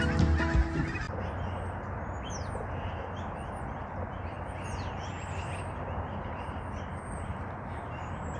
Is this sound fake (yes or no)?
no